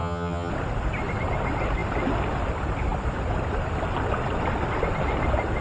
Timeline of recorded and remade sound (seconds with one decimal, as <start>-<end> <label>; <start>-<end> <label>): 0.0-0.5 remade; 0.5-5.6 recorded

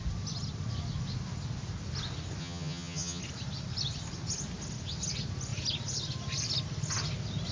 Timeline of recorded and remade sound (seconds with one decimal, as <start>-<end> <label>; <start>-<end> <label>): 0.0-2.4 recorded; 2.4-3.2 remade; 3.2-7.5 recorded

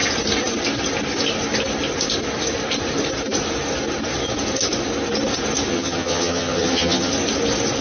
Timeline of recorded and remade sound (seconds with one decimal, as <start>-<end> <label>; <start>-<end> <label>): 0.0-5.7 recorded; 5.7-7.1 remade; 7.1-7.8 recorded

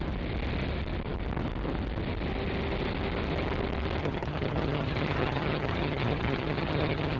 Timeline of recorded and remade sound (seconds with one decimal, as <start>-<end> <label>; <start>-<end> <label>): 0.0-4.0 recorded; 4.0-7.2 remade

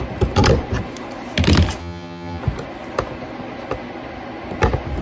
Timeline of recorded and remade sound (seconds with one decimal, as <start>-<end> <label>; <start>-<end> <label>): 0.0-1.8 recorded; 1.8-2.4 remade; 2.4-5.0 recorded